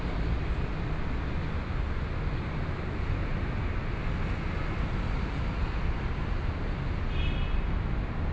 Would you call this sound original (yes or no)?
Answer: yes